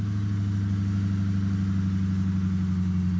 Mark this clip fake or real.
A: real